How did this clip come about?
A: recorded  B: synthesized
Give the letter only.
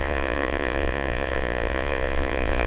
B